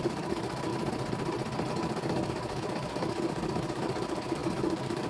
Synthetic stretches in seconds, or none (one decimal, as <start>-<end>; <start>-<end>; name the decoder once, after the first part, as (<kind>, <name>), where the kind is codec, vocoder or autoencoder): 0.0-0.7 (codec, DAC); 1.7-5.1